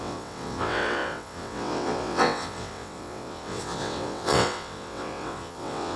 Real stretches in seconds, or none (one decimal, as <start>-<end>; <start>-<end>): none